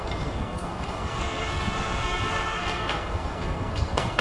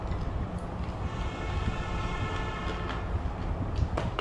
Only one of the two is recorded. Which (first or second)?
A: second